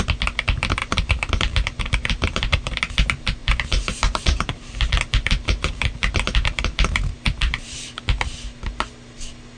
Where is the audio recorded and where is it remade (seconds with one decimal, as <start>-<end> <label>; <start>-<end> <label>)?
0.0-0.8 recorded; 0.8-2.8 remade; 2.8-3.4 recorded; 3.4-8.0 remade; 8.0-9.6 recorded